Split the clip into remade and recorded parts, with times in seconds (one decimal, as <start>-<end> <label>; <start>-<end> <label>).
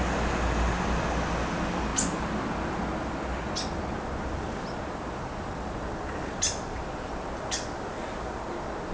0.0-8.9 recorded